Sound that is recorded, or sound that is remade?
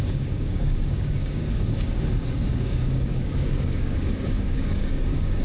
remade